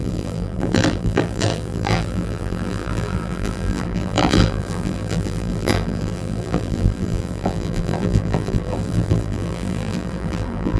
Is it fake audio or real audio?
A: fake